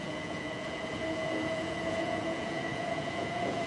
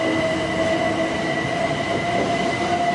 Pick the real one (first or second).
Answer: second